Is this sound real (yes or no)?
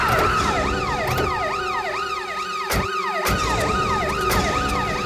yes